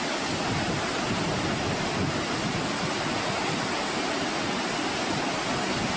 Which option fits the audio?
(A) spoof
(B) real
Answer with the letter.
B